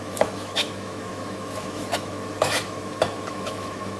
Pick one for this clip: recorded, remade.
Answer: remade